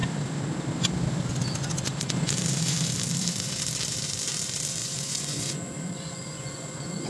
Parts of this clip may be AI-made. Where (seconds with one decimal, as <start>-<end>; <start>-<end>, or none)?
4.8-7.1